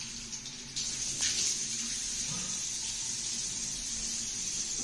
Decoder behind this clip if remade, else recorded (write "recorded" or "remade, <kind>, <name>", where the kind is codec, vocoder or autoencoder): recorded